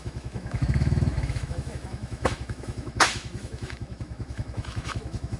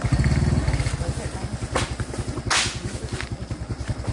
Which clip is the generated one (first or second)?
first